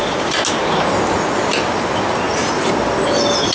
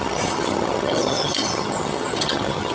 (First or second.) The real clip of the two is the first